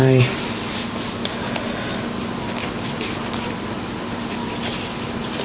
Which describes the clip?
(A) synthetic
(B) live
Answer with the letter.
B